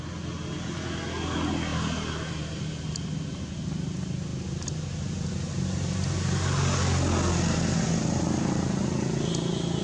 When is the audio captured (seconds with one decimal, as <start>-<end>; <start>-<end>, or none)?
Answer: 0.0-9.8